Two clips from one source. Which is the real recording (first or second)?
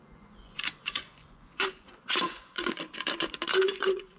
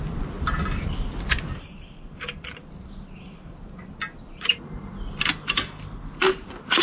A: second